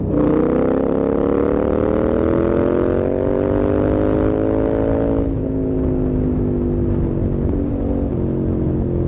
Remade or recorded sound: recorded